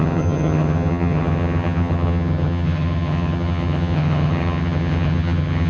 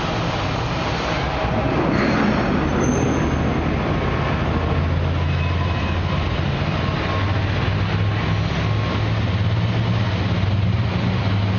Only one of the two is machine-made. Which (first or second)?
first